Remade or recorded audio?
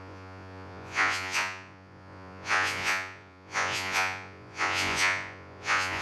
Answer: remade